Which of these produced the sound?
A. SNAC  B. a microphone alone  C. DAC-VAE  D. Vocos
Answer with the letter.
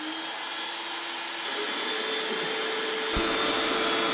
B